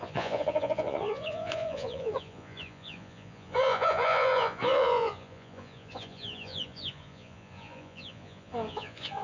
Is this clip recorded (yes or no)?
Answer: no